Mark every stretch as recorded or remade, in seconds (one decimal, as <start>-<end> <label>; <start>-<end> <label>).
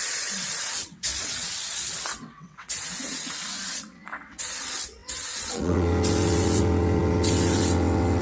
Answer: 0.0-8.2 remade